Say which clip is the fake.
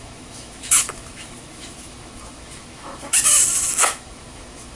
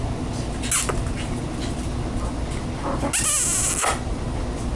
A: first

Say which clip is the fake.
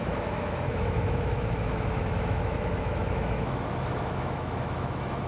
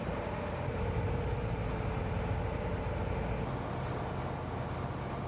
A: first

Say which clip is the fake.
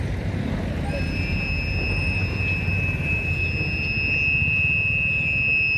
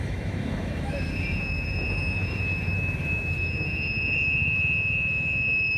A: second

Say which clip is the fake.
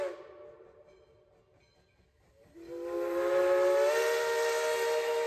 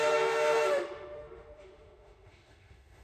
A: second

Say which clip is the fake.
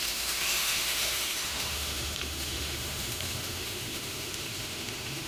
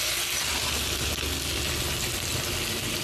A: first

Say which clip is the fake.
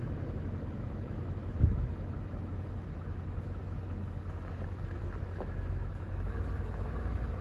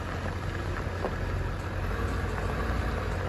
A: first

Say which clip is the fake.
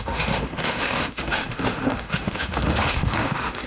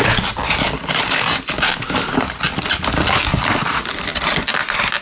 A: first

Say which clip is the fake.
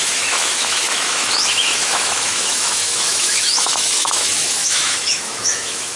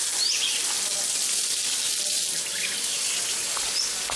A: first